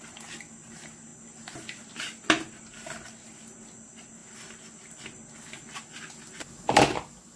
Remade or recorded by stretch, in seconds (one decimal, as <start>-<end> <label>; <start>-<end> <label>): 0.0-7.4 recorded